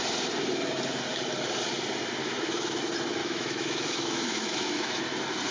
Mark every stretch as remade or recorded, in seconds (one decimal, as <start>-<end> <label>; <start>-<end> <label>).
0.0-2.2 recorded; 2.2-2.8 remade; 2.8-3.2 recorded; 3.2-5.0 remade; 5.0-5.5 recorded